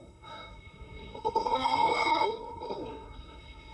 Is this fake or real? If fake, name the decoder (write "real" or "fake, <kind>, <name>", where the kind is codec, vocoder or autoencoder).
fake, codec, SNAC